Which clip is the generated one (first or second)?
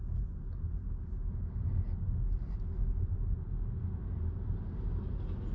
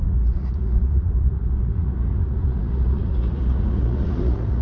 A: second